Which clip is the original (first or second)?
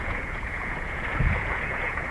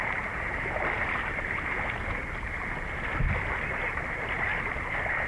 second